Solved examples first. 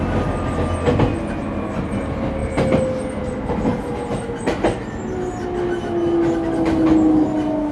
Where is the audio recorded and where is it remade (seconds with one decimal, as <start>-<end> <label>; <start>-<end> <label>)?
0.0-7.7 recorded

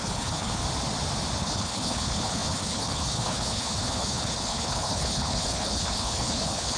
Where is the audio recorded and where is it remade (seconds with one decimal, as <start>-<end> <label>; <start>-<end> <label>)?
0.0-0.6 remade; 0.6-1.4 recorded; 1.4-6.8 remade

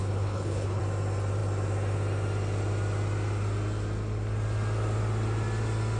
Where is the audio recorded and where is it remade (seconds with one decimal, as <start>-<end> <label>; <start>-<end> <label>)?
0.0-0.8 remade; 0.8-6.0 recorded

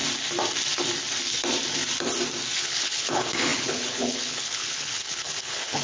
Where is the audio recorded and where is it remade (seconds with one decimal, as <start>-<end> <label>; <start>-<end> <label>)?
0.0-2.6 recorded; 2.6-5.8 remade